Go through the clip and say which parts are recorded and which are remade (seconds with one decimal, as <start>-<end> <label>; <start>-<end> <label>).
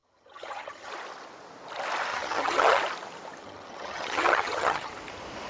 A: 0.0-0.9 remade; 0.9-2.1 recorded; 2.1-2.8 remade; 2.8-3.4 recorded; 3.4-4.9 remade; 4.9-5.5 recorded